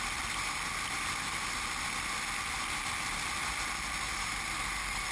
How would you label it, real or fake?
real